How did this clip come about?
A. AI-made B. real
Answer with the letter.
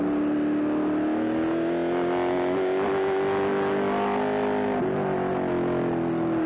B